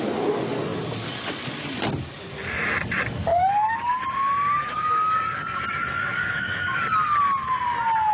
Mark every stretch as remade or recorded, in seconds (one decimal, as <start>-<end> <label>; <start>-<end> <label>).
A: 0.0-3.3 recorded; 3.3-4.0 remade; 4.0-4.6 recorded; 4.6-5.6 remade; 5.6-6.1 recorded; 6.1-6.8 remade; 6.8-8.1 recorded